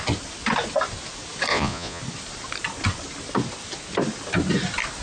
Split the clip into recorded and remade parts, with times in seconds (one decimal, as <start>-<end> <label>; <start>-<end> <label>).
0.0-1.5 recorded; 1.5-2.0 remade; 2.0-5.0 recorded